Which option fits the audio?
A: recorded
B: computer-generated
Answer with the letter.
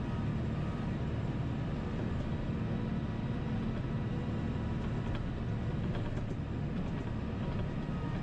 A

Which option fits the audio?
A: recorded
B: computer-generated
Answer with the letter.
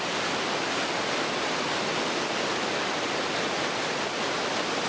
A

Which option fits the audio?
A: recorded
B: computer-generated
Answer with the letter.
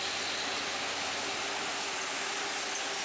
A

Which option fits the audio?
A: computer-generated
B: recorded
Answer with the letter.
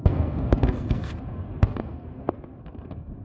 A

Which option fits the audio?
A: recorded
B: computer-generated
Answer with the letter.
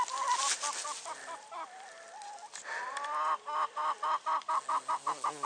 A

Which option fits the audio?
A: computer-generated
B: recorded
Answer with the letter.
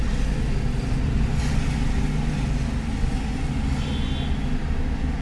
B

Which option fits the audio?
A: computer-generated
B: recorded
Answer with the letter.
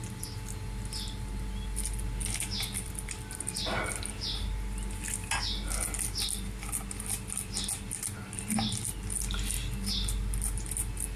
B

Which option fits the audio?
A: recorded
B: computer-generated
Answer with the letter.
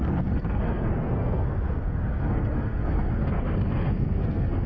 B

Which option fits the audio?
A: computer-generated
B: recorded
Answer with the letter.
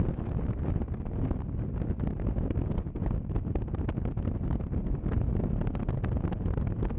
B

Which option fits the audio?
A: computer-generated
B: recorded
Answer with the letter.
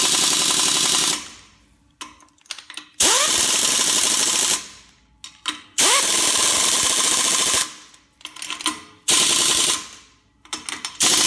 B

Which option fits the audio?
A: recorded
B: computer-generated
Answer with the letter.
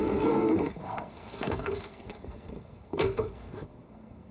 B